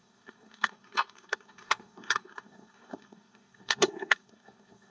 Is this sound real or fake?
fake